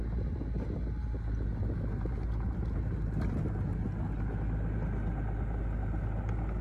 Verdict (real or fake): real